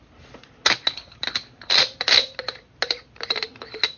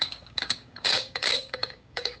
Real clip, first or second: first